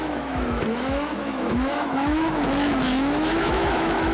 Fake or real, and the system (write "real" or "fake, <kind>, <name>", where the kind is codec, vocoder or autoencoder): fake, autoencoder, DAC-VAE